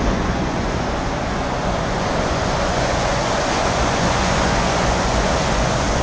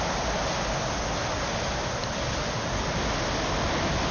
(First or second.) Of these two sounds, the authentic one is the second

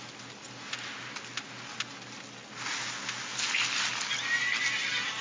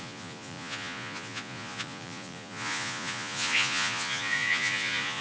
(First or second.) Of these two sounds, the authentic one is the first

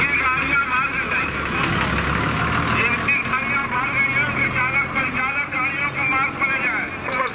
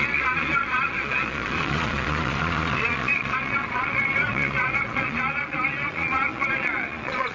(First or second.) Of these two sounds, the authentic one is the first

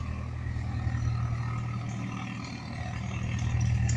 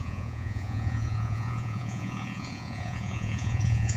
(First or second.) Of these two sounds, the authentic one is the first